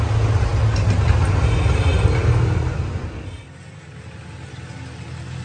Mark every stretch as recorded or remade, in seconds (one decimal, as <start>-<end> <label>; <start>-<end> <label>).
0.0-5.4 recorded